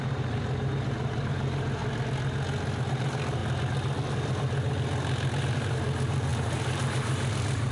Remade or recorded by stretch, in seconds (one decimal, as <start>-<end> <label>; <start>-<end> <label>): 0.0-1.8 remade; 1.8-2.9 recorded; 2.9-3.4 remade; 3.4-5.4 recorded; 5.4-7.7 remade